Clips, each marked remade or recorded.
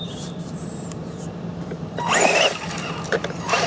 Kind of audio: remade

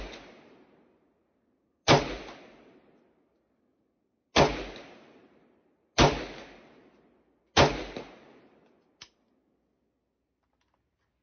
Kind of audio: recorded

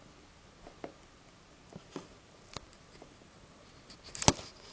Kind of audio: recorded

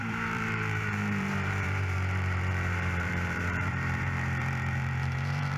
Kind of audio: remade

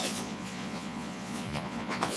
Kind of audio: remade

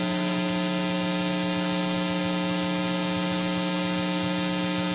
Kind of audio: recorded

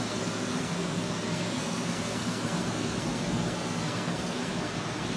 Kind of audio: remade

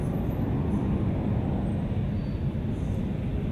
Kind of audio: recorded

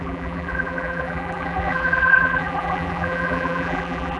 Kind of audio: remade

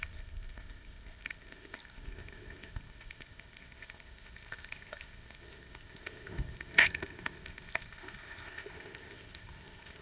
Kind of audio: remade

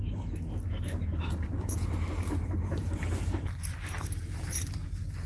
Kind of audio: recorded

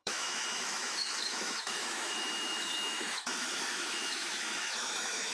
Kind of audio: remade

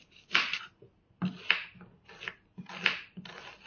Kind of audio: recorded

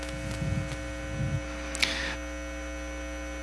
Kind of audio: recorded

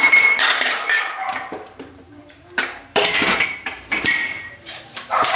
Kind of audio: remade